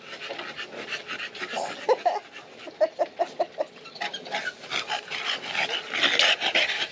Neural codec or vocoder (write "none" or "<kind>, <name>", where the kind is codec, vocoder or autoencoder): none